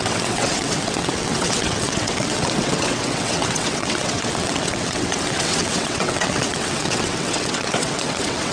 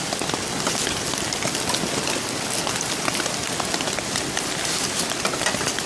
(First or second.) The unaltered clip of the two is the second